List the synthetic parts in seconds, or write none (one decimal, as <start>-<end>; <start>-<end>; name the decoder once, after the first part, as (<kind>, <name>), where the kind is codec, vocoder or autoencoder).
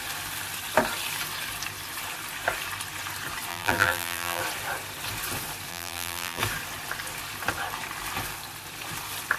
3.5-4.4 (vocoder, BigVGAN v2); 5.7-6.4